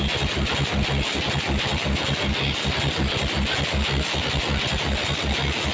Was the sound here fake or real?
real